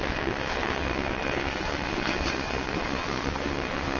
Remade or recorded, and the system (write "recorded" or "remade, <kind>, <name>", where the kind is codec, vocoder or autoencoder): remade, vocoder, WaveNeXt